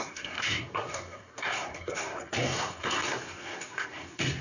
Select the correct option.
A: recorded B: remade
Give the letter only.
B